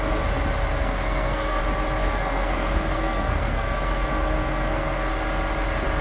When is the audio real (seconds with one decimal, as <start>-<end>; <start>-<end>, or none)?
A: 0.0-0.8; 1.6-2.0; 5.1-6.0